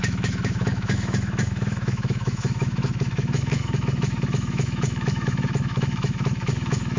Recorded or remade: remade